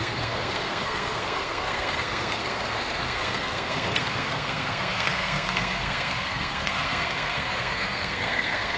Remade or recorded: remade